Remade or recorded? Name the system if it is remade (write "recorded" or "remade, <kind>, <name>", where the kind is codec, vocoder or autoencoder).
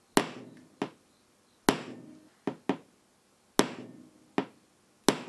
recorded